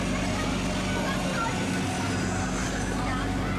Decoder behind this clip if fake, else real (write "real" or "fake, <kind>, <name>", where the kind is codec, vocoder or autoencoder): real